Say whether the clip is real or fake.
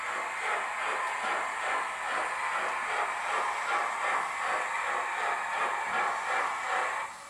real